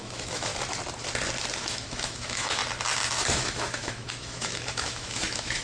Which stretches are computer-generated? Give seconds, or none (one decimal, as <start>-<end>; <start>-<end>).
0.0-0.5; 1.6-2.6; 3.3-5.6